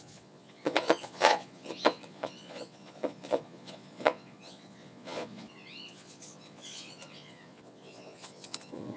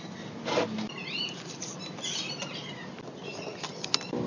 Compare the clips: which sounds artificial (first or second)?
first